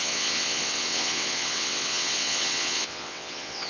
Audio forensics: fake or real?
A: fake